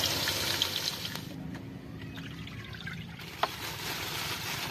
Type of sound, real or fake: real